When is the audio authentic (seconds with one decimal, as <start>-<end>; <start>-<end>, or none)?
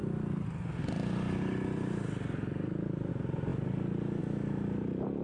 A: 0.0-5.2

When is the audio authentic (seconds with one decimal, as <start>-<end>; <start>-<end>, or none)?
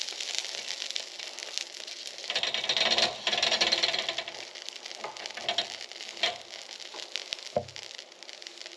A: 0.0-8.8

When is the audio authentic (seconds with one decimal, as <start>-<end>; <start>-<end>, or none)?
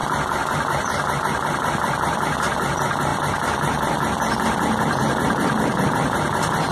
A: 0.0-6.7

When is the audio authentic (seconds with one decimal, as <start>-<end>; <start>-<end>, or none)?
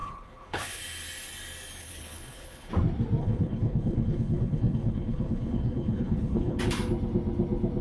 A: 0.8-1.8; 2.7-3.2; 6.6-7.8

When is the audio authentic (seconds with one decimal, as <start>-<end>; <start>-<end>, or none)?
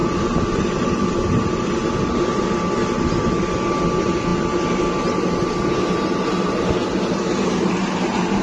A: 0.0-8.4